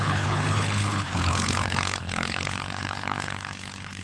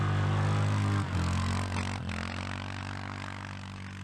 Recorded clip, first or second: second